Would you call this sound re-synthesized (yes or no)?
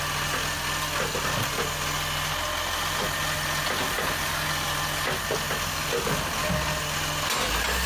no